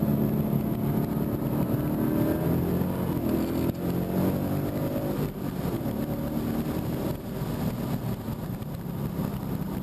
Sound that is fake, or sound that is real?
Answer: real